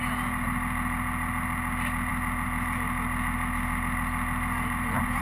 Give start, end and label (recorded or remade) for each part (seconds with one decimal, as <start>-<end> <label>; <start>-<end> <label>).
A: 0.0-5.2 recorded